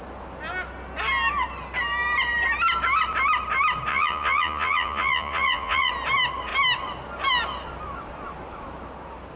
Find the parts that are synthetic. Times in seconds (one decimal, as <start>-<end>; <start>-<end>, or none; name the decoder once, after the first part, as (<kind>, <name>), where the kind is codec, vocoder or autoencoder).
3.9-5.9 (vocoder, Vocos)